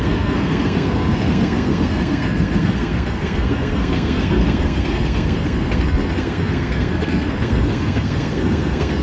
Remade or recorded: remade